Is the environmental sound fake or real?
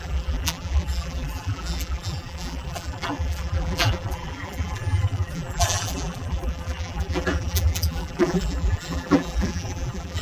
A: fake